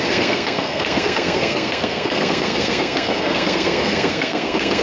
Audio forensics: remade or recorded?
remade